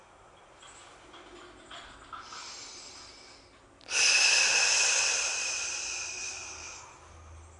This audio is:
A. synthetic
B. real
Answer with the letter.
B